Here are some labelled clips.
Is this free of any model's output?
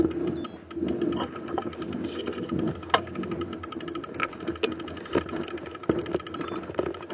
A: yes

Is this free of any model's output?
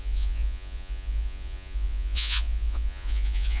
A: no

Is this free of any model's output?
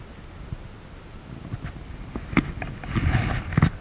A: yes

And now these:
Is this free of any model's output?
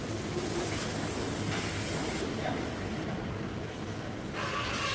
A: yes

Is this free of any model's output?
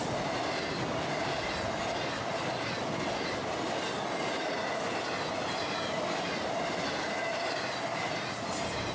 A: yes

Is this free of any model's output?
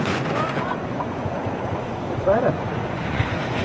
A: no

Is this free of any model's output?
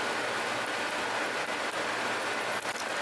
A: yes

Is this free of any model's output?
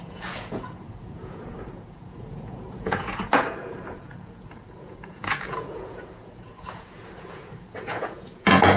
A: no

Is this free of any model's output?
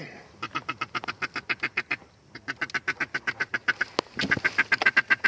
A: yes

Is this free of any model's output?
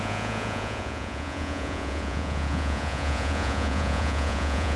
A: no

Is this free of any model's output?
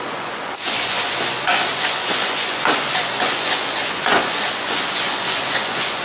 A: no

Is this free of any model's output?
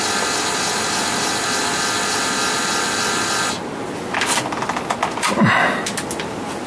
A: yes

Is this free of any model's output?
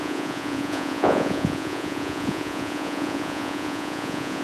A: no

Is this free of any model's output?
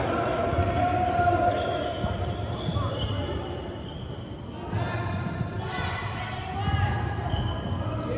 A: yes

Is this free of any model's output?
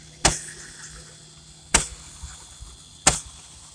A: yes